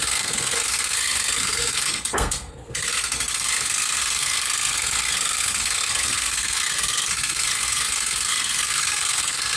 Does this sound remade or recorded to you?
remade